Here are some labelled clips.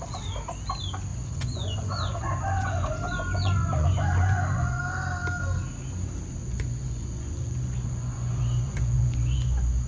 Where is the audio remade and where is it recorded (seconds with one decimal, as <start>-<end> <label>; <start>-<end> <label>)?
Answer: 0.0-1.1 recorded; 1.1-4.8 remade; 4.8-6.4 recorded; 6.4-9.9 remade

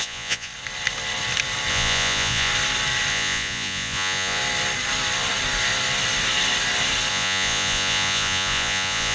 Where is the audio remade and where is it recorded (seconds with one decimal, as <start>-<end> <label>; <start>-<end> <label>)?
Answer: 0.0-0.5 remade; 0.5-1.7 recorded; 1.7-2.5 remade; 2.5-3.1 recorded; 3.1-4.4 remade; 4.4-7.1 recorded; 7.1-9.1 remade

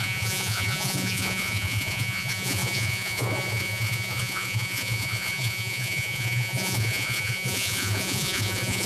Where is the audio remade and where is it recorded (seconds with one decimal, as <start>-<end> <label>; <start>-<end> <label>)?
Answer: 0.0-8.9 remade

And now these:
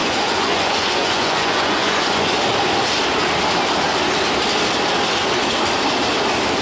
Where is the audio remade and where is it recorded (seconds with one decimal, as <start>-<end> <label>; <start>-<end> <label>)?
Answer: 0.0-2.3 remade; 2.3-6.6 recorded

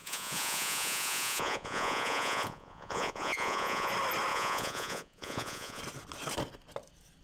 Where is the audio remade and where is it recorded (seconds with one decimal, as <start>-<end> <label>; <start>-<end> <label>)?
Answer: 0.0-3.9 remade; 3.9-4.3 recorded; 4.3-5.8 remade; 5.8-7.2 recorded

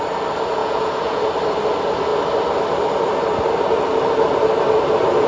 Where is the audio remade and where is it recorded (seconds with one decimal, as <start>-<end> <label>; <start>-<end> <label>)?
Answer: 0.0-0.6 recorded; 0.6-1.2 remade; 1.2-5.3 recorded